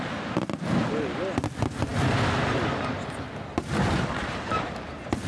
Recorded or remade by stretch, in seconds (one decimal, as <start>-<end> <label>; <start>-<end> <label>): 0.0-5.3 recorded